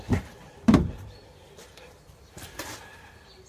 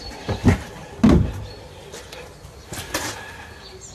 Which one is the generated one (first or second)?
first